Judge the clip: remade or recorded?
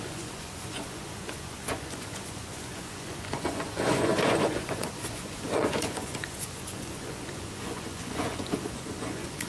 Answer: remade